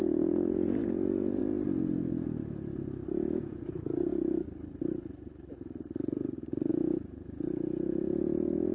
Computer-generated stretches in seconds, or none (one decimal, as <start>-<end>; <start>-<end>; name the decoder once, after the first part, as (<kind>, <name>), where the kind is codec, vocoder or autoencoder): 0.0-1.4 (vocoder, Vocos); 3.4-4.1; 6.7-8.7